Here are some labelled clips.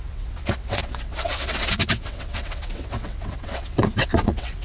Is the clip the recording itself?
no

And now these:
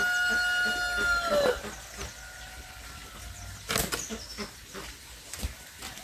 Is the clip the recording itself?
yes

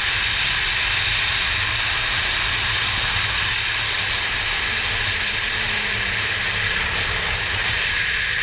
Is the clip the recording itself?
yes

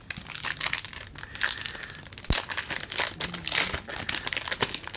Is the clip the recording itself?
yes